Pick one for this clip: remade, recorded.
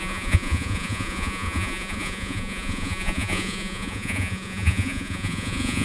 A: remade